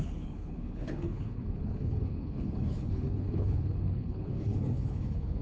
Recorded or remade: remade